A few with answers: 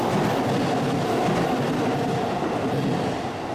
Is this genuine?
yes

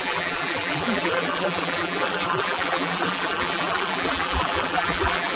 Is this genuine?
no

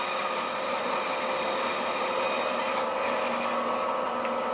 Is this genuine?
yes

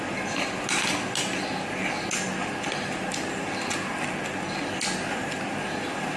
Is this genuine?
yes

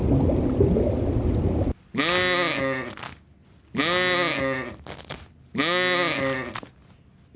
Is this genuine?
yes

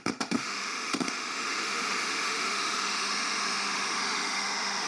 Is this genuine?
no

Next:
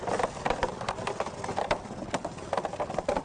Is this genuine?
yes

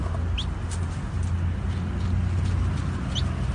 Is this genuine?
yes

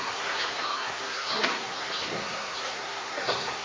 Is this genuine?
no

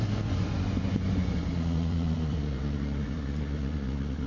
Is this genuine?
no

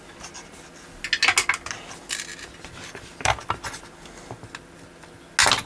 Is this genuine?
yes